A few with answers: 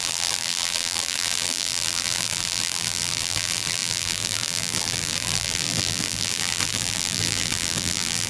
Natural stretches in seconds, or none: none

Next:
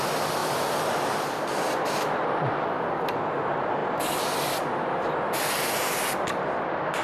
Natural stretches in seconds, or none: 0.0-7.0

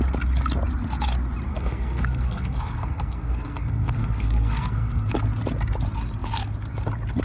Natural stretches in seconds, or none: 0.0-1.5; 5.1-7.2

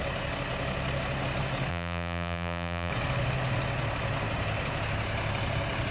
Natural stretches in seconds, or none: 0.0-1.7; 2.9-5.9

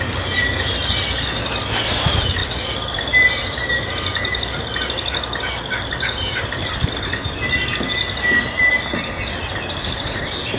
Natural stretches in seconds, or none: 0.0-10.6

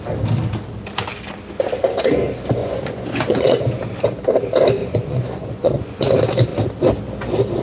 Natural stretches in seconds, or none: 0.0-2.6; 3.8-4.8; 6.1-7.6

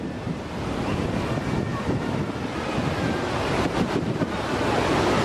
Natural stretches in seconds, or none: 0.0-5.2

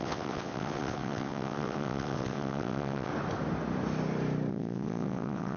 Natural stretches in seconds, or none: 3.1-4.5